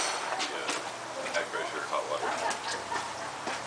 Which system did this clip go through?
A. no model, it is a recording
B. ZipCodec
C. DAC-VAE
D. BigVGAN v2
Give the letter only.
A